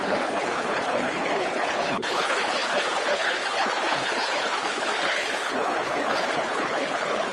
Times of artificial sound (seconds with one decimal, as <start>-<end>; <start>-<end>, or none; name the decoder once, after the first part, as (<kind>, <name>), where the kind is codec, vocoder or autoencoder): 0.0-7.3 (codec, HILCodec)